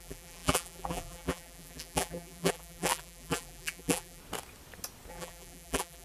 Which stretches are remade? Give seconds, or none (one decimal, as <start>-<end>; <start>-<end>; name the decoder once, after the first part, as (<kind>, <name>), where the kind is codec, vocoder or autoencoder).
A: 0.0-4.2 (vocoder, BigVGAN v2); 5.1-6.0